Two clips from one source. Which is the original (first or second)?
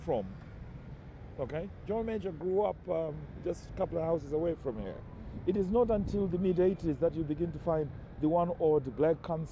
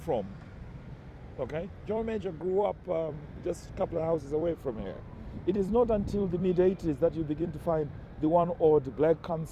first